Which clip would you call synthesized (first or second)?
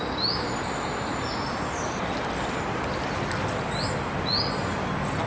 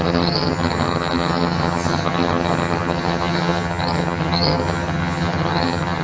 second